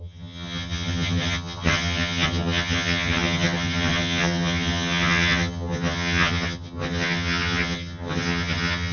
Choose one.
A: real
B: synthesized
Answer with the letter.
B